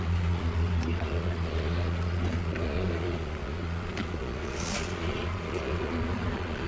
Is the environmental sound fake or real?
fake